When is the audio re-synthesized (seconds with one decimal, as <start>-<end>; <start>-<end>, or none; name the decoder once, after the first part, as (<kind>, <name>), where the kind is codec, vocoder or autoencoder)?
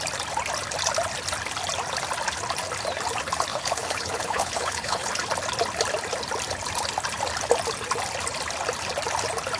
3.5-5.1 (codec, HILCodec)